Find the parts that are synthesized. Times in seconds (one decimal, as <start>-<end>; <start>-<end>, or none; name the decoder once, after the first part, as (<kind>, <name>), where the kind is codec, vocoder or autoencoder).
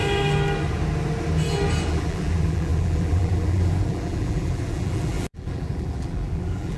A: 1.9-6.8 (vocoder, BigVGAN v2)